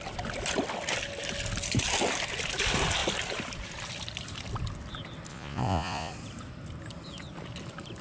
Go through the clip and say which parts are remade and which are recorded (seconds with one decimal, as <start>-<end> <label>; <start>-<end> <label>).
0.0-5.3 recorded; 5.3-6.1 remade; 6.1-8.0 recorded